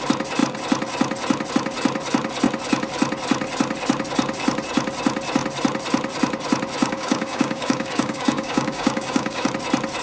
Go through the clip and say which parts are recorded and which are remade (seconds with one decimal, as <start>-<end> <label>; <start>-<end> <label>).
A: 0.0-6.8 recorded; 6.8-9.5 remade; 9.5-10.0 recorded